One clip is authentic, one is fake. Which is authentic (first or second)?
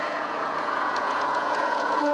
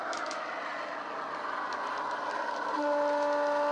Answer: second